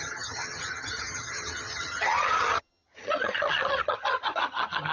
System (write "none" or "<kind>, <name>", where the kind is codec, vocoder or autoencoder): vocoder, HiFi-GAN